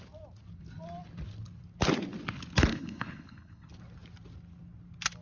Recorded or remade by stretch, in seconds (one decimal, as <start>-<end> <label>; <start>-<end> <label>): 0.0-2.7 recorded; 2.7-3.7 remade; 3.7-5.2 recorded